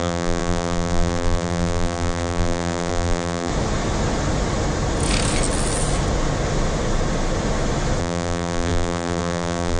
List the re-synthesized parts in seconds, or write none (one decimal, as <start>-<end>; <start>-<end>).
0.0-3.5; 8.0-9.8